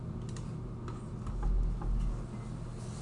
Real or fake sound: real